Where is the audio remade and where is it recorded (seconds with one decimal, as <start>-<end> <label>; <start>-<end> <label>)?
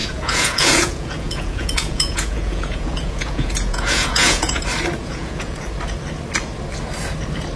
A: 0.0-4.6 remade; 4.6-5.0 recorded; 5.0-5.6 remade; 5.6-7.6 recorded